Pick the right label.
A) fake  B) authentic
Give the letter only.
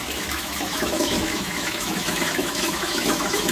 A